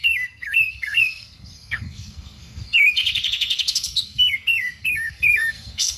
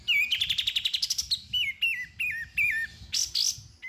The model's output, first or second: first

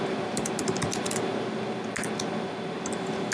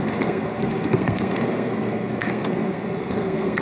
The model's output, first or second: second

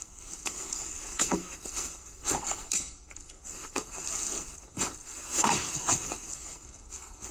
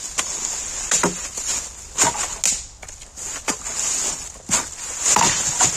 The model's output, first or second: first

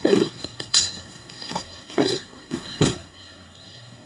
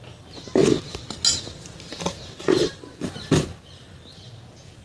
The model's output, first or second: first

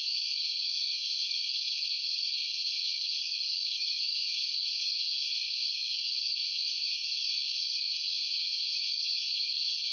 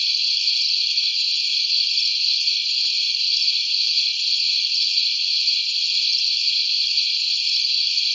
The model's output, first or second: first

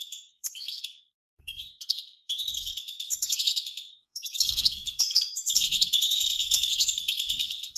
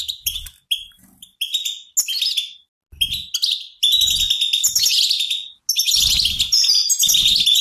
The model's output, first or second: first